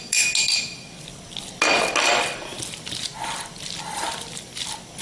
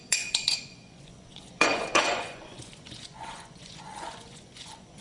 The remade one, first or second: second